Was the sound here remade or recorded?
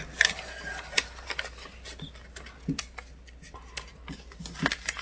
recorded